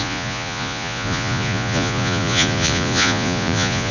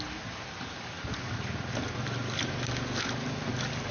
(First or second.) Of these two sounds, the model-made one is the first